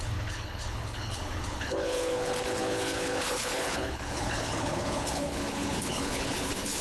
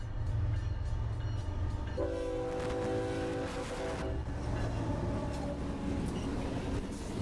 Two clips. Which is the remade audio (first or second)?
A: first